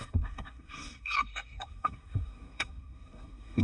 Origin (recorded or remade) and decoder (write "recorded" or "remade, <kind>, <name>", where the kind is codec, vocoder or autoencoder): remade, codec, SNAC